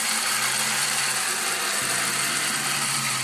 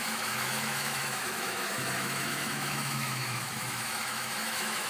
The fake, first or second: second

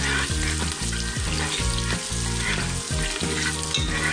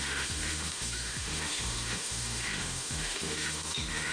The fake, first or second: second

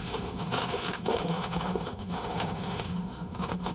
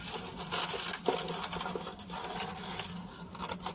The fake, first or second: first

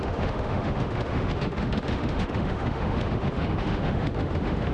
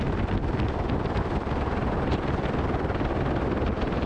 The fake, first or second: first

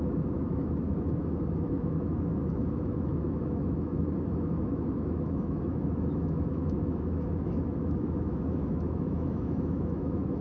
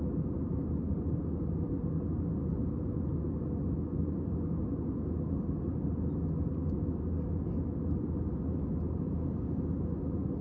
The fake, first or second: first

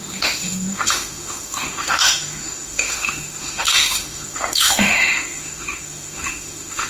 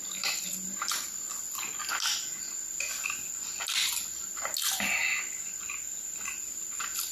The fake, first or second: first